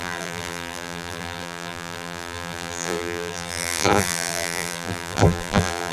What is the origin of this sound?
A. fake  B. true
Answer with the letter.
A